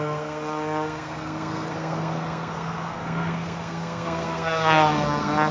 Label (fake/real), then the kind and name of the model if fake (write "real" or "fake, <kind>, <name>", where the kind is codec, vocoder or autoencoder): fake, codec, SNAC